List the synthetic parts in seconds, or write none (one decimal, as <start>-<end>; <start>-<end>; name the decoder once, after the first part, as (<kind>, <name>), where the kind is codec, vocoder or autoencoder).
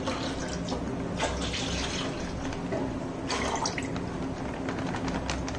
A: none